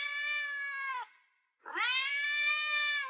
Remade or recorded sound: recorded